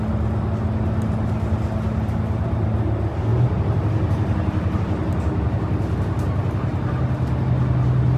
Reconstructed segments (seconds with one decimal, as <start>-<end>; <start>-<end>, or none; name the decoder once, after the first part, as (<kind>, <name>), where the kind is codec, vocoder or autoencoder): none